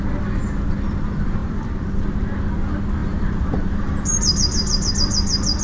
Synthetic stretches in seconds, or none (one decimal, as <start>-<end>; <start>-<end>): 1.4-2.0; 3.0-4.9